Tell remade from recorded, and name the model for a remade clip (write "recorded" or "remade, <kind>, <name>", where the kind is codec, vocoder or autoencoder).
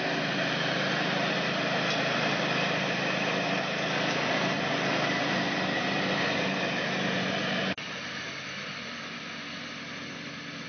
remade, vocoder, BigVGAN v2